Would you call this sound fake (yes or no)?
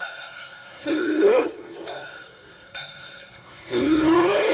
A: yes